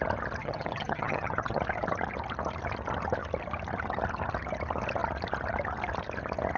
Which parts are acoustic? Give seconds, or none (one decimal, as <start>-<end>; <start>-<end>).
0.0-0.4; 1.6-6.6